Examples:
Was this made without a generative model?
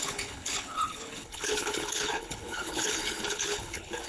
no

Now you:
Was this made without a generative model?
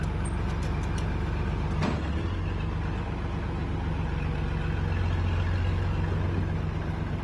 yes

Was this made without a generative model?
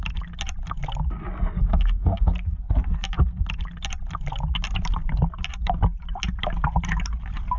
yes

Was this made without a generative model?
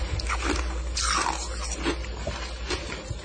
yes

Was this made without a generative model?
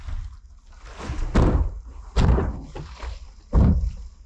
yes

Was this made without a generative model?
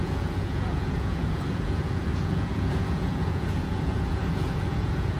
no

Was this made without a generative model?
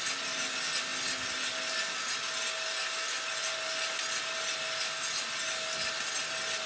yes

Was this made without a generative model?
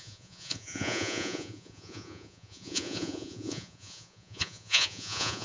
no